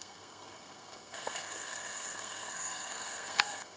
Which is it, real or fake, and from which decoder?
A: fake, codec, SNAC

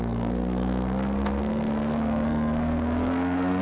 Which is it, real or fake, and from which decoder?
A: fake, codec, SNAC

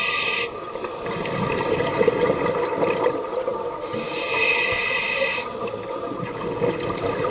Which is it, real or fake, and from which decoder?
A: real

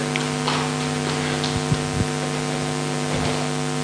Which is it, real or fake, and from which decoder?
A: real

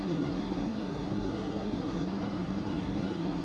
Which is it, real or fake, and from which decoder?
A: fake, codec, SNAC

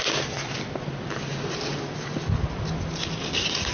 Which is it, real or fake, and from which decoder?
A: real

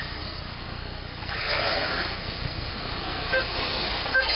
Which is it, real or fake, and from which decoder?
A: fake, codec, SNAC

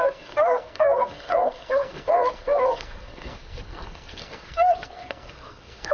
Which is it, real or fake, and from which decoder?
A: fake, codec, SNAC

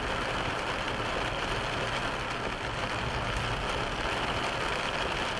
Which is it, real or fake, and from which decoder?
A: real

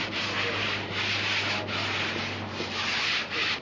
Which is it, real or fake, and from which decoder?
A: real